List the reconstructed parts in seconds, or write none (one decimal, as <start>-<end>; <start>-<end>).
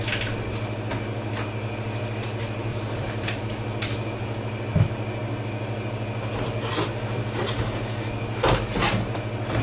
2.7-3.4